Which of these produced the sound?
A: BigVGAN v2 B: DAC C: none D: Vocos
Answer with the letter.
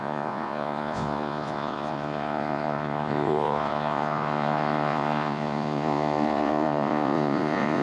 D